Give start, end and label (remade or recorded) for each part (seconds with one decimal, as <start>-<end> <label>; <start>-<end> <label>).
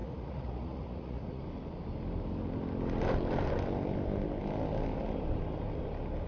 0.0-1.4 remade; 1.4-6.3 recorded